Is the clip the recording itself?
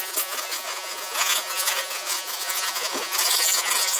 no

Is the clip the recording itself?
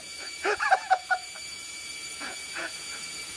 no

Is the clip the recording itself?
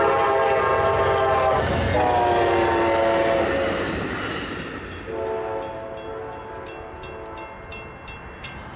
yes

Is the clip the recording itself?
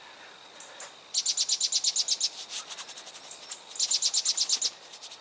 yes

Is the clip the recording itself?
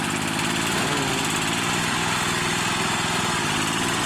yes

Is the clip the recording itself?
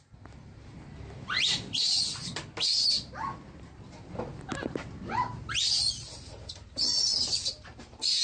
yes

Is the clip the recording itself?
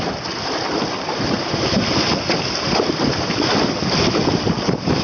yes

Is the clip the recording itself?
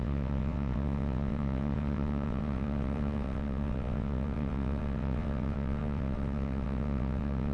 no